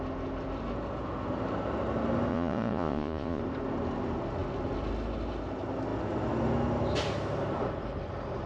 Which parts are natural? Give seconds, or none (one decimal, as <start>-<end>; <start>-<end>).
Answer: 0.0-2.3; 3.4-8.5